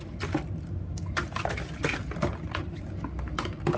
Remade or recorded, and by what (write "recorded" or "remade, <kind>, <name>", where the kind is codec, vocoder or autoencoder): recorded